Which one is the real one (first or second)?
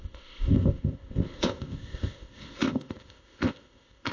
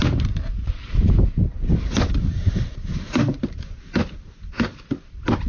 second